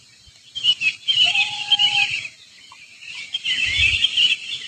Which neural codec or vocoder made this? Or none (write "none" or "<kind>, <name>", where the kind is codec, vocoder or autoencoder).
none